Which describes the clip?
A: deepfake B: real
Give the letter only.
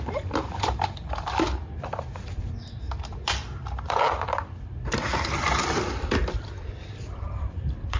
A